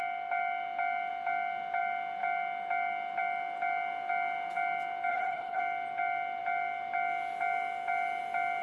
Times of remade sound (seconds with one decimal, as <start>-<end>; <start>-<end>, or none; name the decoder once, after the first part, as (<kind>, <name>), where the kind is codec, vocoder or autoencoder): 5.1-5.6 (codec, HILCodec)